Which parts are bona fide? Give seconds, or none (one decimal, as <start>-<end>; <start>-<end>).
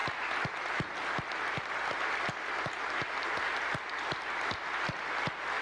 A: 0.0-5.6